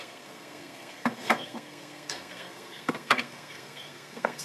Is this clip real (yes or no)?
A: no